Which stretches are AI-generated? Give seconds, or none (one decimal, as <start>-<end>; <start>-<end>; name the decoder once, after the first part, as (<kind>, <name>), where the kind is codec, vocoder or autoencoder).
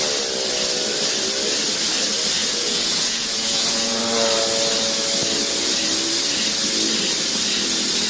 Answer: 2.4-4.0 (vocoder, Vocos)